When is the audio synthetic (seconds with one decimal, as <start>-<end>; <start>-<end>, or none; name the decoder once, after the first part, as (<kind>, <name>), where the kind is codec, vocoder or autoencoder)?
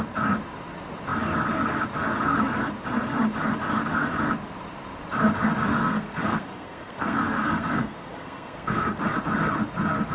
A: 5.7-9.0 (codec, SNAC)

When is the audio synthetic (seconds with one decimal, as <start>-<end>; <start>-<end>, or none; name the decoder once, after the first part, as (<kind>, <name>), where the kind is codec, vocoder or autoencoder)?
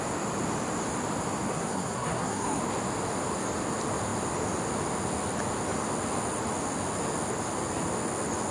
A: 1.5-2.6 (codec, SNAC)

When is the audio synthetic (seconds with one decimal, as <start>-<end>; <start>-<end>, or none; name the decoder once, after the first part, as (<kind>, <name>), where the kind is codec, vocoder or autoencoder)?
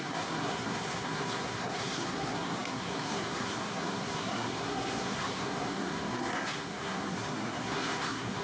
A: 0.0-8.4 (codec, SNAC)